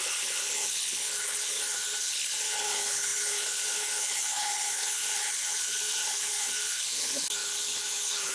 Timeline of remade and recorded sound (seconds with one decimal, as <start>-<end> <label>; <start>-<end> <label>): 0.0-8.3 remade